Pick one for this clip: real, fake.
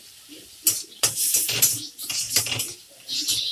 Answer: real